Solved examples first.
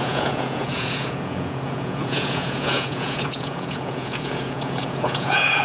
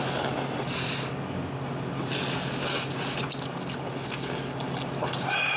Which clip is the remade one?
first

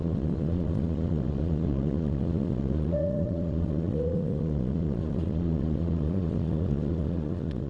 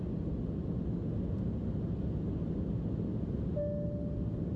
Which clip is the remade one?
first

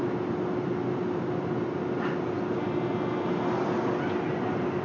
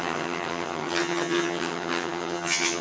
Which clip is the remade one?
second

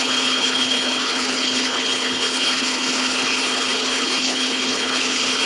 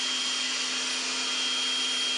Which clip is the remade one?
first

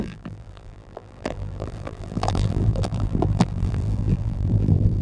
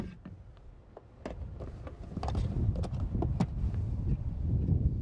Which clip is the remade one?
first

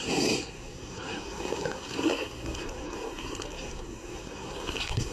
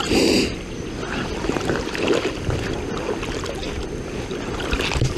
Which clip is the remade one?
first